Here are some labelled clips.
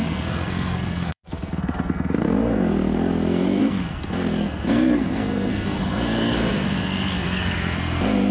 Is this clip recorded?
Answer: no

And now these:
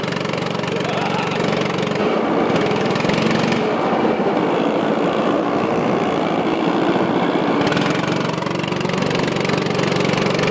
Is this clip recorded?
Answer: yes